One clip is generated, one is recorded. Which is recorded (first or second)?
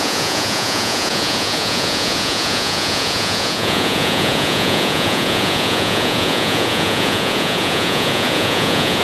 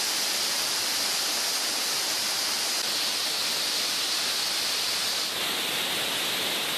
second